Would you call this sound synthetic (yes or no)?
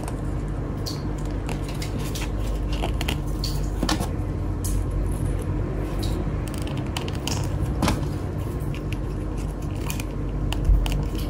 no